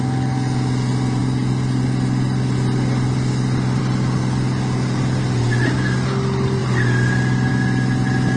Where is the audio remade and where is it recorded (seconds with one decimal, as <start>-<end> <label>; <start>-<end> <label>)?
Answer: 0.0-8.4 recorded